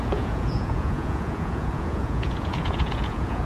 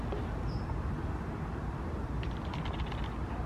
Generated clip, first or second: first